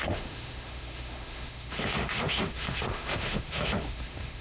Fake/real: fake